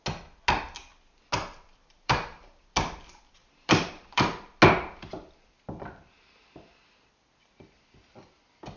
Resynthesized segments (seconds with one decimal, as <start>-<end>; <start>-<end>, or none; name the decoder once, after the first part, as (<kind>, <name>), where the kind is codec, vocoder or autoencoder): 1.8-2.7 (vocoder, BigVGAN v2); 3.4-4.2

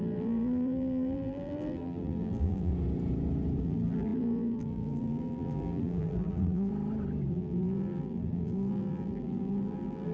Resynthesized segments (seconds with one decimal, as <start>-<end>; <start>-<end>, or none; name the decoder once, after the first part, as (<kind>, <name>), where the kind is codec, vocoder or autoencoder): 0.0-2.7 (vocoder, BigVGAN v2); 3.6-6.7; 7.3-10.1